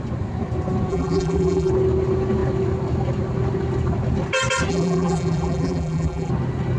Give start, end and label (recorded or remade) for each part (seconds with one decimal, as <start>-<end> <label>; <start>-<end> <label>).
0.0-0.9 recorded; 0.9-1.7 remade; 1.7-4.7 recorded; 4.7-6.3 remade; 6.3-6.8 recorded